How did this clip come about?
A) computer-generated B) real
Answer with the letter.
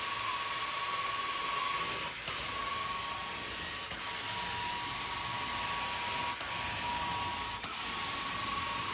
B